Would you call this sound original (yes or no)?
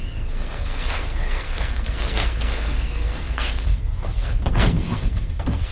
no